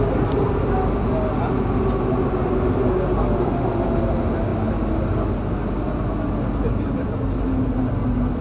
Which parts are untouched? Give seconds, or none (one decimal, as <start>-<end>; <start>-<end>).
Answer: 0.0-8.4

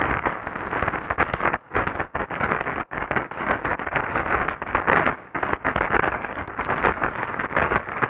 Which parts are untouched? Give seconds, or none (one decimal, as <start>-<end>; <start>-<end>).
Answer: 0.4-1.2

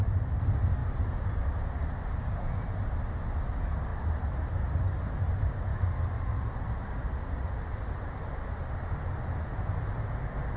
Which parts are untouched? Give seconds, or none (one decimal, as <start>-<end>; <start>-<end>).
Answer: 0.0-10.6

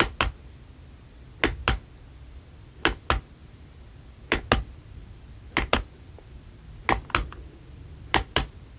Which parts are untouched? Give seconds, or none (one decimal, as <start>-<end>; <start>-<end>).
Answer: 0.0-8.8

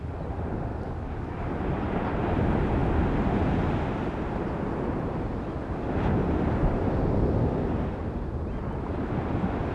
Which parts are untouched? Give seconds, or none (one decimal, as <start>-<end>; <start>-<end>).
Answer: 0.0-0.7; 1.4-9.7

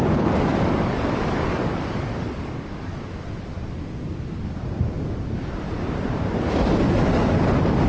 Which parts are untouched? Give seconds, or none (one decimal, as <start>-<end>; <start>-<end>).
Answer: 2.9-7.1